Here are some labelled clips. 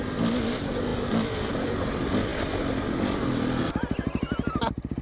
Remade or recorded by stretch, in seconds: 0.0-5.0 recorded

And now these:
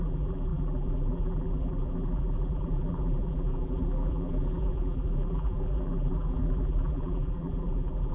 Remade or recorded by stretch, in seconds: 0.0-8.1 remade